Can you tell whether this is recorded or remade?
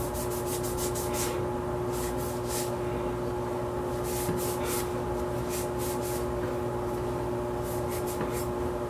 recorded